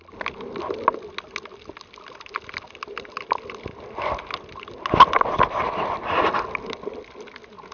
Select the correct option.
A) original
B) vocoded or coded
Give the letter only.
A